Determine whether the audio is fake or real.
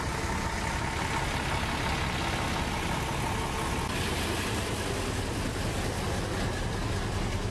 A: real